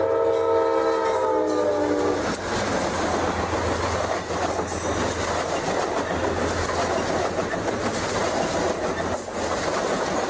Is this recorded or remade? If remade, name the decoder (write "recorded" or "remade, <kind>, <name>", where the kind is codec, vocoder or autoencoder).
recorded